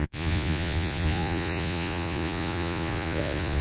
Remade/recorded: remade